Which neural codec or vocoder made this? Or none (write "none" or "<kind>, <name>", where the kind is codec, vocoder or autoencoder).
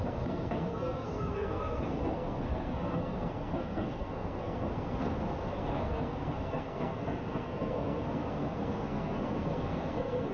codec, SNAC